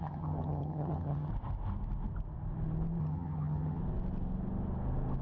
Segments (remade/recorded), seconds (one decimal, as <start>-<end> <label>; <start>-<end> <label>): 0.0-1.3 remade; 1.3-3.0 recorded; 3.0-3.8 remade; 3.8-5.2 recorded